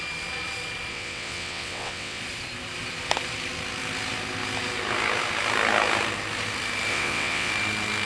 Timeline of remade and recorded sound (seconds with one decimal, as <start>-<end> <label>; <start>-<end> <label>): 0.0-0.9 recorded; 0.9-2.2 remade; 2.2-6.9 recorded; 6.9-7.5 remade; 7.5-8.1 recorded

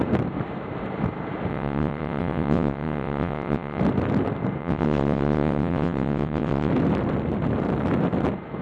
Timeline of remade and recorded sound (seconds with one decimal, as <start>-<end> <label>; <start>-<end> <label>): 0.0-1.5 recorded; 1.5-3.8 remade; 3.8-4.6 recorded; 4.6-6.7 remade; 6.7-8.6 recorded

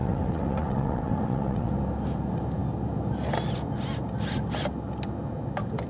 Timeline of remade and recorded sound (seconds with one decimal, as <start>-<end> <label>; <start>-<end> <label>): 0.0-1.7 remade; 1.7-5.9 recorded

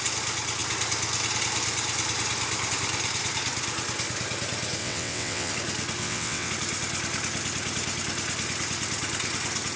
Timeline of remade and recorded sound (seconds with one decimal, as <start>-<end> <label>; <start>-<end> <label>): 0.0-4.8 recorded; 4.8-5.5 remade; 5.5-6.0 recorded; 6.0-6.5 remade; 6.5-9.8 recorded

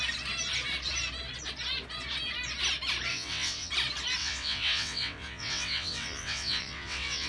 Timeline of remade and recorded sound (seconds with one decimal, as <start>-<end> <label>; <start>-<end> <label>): 0.0-3.1 recorded; 3.1-3.7 remade; 3.7-4.2 recorded; 4.2-7.3 remade

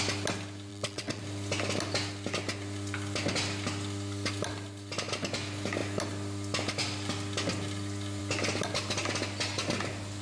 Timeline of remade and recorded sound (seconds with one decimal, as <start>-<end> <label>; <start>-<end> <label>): 0.0-0.7 recorded; 0.7-1.2 remade; 1.2-10.2 recorded

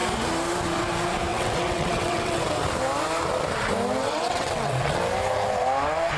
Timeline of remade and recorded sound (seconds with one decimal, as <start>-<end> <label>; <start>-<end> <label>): 0.0-1.3 recorded; 1.3-2.4 remade; 2.4-4.0 recorded; 4.0-5.0 remade; 5.0-6.2 recorded

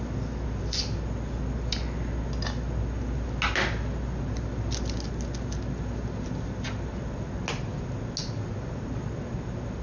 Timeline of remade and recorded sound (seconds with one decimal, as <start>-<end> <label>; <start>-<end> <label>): 0.0-9.8 recorded